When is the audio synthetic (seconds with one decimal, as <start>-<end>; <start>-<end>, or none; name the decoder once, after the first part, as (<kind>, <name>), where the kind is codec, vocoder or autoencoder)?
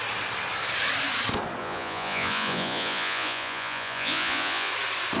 1.6-4.7 (vocoder, Vocos)